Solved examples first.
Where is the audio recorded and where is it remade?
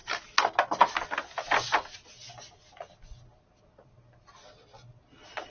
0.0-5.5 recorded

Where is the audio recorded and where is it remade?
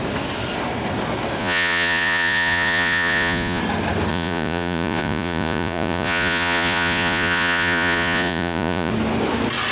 0.0-1.4 recorded; 1.4-3.6 remade; 3.6-4.1 recorded; 4.1-8.9 remade; 8.9-9.7 recorded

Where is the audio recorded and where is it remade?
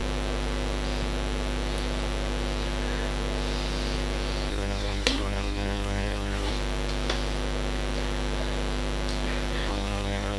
0.0-4.5 recorded; 4.5-6.5 remade; 6.5-9.7 recorded; 9.7-10.4 remade